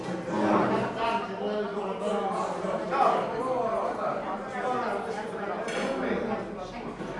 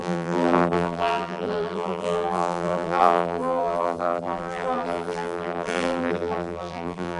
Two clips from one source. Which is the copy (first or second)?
second